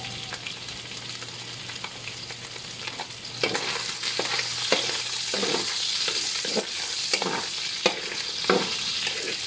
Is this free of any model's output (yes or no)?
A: yes